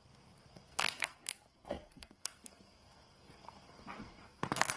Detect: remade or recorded remade